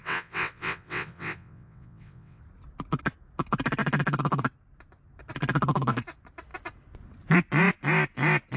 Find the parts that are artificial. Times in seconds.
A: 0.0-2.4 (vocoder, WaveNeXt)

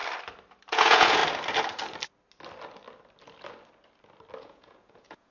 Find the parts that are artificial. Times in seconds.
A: 0.7-1.2 (vocoder, Vocos); 4.4-5.3

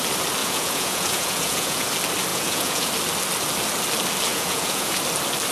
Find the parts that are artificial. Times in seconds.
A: 0.4-1.9 (vocoder, Vocos); 2.3-2.9; 4.3-5.0